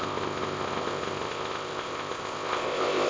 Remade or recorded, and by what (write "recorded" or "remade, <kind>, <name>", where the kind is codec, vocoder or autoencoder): remade, codec, ZipCodec